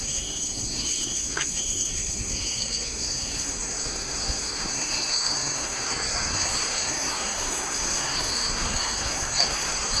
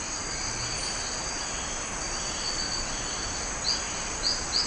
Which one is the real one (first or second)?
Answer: second